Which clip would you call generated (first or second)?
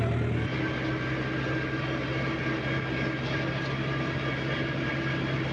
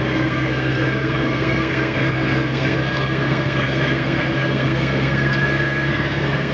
second